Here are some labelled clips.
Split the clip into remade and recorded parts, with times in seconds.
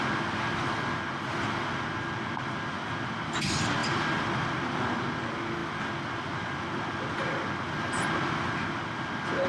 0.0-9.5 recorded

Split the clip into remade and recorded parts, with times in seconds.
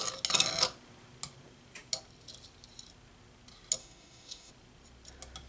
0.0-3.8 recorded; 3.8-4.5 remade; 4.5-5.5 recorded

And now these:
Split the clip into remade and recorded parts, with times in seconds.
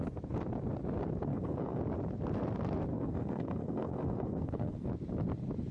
0.0-1.3 recorded; 1.3-1.8 remade; 1.8-2.9 recorded; 2.9-4.9 remade; 4.9-5.7 recorded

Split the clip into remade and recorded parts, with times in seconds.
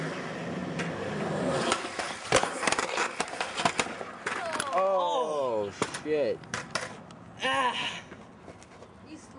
0.0-9.4 recorded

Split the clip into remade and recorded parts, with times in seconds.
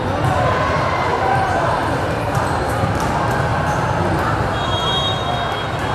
0.0-1.1 recorded; 1.1-2.7 remade; 2.7-3.5 recorded; 3.5-4.0 remade; 4.0-5.9 recorded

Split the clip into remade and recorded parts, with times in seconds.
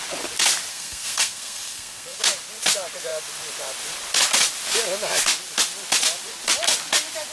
0.0-0.7 recorded; 0.7-2.2 remade; 2.2-7.3 recorded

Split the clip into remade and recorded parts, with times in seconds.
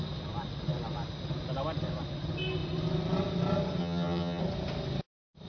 0.0-3.8 recorded; 3.8-4.4 remade; 4.4-5.5 recorded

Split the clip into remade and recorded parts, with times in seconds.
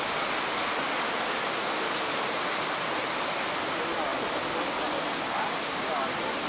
0.0-6.5 recorded